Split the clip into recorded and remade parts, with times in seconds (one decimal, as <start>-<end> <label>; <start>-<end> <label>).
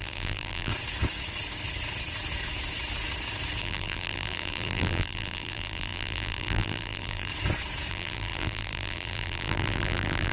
0.0-0.7 remade; 0.7-3.6 recorded; 3.6-7.3 remade; 7.3-7.9 recorded; 7.9-10.3 remade